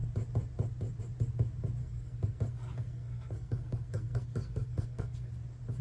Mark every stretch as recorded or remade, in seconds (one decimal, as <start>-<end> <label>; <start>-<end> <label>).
0.0-1.8 recorded; 1.8-5.3 remade; 5.3-5.8 recorded